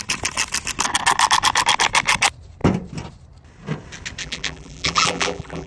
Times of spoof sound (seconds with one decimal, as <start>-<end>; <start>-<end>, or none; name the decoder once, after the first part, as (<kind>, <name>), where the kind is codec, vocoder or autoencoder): 4.2-5.7 (vocoder, BigVGAN v2)